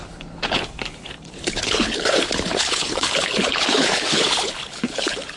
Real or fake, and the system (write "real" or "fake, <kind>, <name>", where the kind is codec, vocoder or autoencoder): fake, codec, HILCodec